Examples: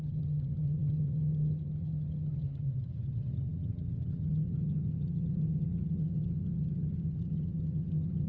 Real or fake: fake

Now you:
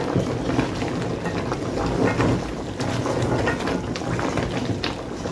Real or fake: real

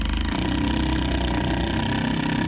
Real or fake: real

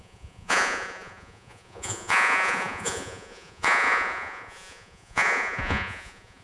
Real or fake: fake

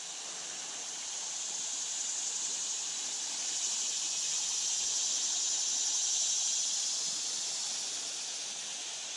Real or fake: real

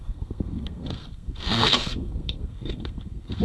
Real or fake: fake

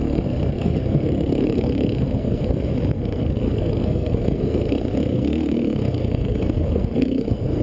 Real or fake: fake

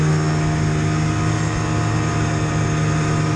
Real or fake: real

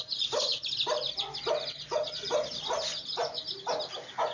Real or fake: real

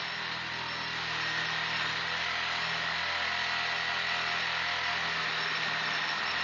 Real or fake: real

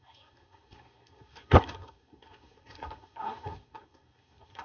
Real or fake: fake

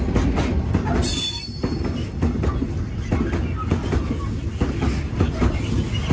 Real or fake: real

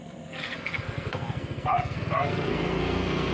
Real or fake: fake